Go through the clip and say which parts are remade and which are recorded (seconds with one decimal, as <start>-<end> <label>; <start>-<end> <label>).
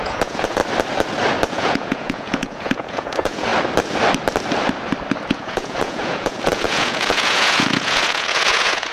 0.0-0.6 remade; 0.6-1.5 recorded; 1.5-3.5 remade; 3.5-5.3 recorded; 5.3-8.9 remade